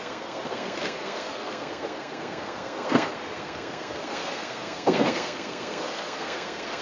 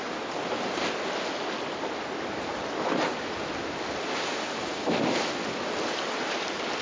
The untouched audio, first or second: second